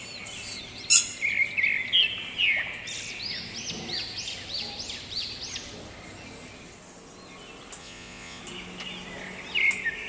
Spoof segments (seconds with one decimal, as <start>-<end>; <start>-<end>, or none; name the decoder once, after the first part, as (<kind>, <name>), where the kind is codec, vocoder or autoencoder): 7.8-8.4 (vocoder, Vocos)